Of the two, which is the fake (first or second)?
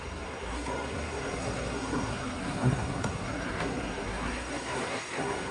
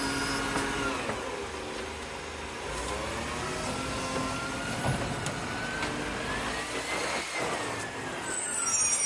first